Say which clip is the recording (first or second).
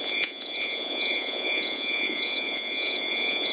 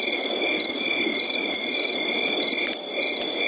second